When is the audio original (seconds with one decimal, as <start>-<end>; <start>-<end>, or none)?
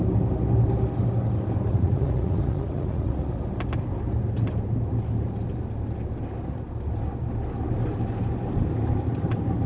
0.0-1.7; 3.3-9.7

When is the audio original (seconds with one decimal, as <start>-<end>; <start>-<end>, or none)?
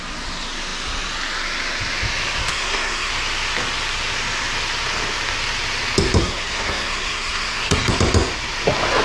0.0-2.5; 3.1-6.2; 7.9-9.0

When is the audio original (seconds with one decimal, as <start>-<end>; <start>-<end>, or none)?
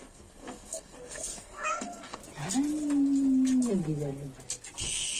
2.2-4.8